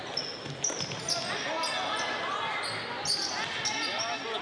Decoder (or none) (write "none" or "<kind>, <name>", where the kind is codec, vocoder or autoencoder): none